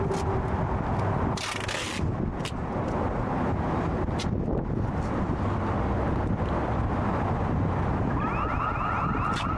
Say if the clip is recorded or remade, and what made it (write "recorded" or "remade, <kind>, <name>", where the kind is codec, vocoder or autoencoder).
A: recorded